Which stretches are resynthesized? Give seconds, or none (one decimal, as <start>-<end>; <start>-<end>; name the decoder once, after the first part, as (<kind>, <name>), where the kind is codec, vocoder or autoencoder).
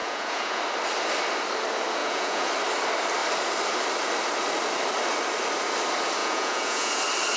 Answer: 0.0-0.6 (vocoder, Vocos); 2.0-2.5; 6.2-7.0